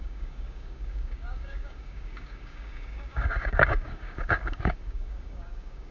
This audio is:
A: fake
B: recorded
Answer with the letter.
A